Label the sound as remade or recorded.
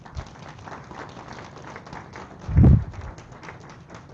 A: recorded